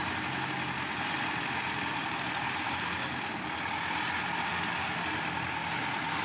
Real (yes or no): yes